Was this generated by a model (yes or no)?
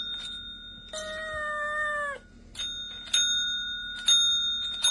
no